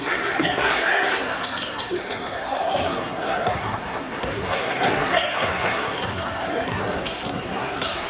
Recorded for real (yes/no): no